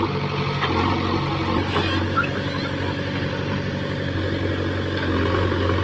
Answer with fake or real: real